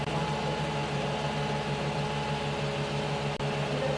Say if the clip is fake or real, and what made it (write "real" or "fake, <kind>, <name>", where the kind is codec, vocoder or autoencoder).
real